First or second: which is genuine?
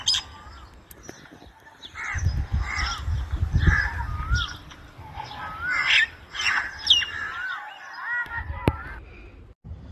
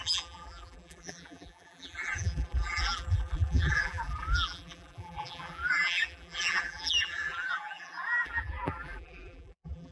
first